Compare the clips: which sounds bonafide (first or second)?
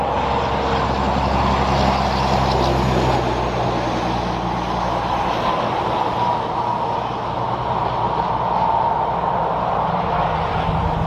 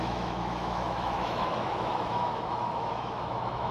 first